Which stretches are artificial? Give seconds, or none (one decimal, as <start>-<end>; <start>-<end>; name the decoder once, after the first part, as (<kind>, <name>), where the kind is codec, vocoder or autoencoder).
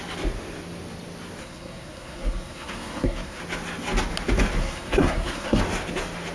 1.4-3.4 (codec, SNAC); 4.6-5.6